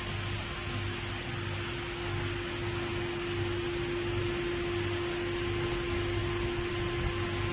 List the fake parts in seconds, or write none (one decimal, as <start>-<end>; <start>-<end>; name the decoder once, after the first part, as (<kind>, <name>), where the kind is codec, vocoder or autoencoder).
none